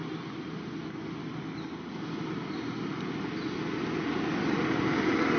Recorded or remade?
recorded